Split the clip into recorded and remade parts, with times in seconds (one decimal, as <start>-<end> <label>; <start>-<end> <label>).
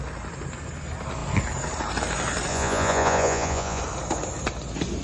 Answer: 0.0-2.5 recorded; 2.5-3.8 remade; 3.8-5.0 recorded